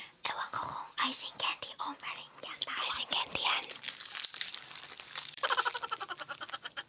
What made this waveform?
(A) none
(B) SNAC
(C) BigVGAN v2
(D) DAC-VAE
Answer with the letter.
C